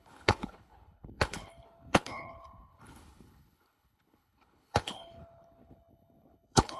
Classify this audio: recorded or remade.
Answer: remade